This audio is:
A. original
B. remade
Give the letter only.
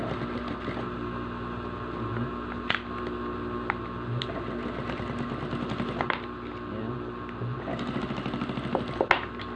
A